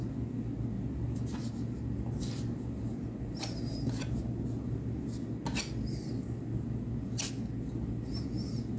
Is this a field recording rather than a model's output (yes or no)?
yes